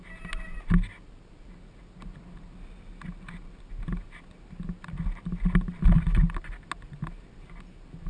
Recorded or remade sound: recorded